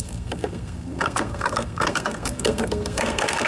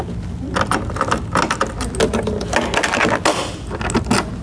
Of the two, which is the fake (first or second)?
first